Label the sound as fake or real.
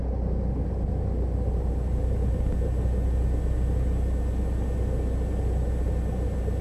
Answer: real